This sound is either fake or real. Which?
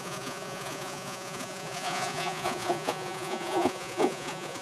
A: fake